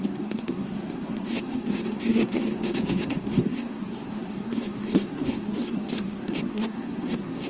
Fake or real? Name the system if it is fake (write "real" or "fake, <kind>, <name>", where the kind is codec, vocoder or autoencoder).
fake, codec, SNAC